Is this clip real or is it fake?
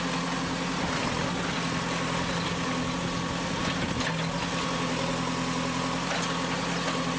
real